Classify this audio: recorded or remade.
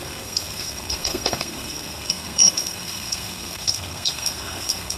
remade